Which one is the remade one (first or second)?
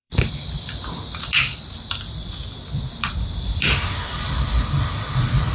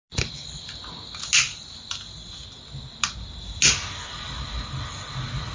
first